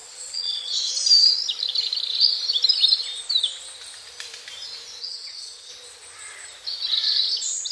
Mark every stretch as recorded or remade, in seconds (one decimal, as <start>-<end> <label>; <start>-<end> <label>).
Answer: 0.0-0.9 remade; 0.9-5.0 recorded; 5.0-5.7 remade; 5.7-7.7 recorded